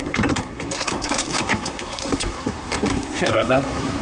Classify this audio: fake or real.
fake